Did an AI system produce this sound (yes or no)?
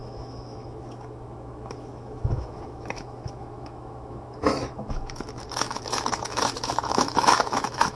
yes